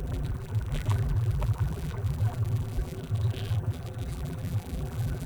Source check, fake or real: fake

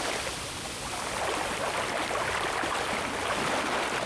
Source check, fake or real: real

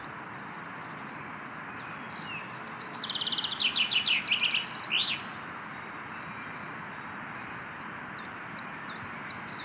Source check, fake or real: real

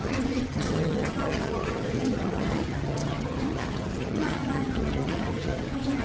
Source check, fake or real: fake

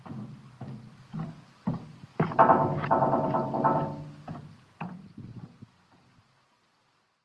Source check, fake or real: real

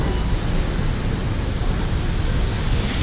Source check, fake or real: real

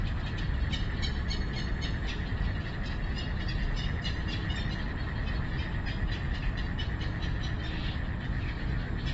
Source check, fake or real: real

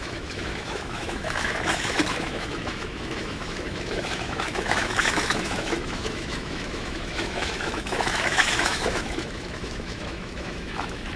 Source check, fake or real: fake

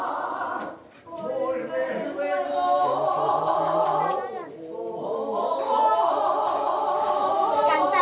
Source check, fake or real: real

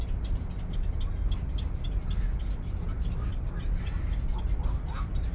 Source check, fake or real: real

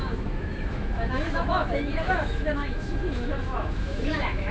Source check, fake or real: fake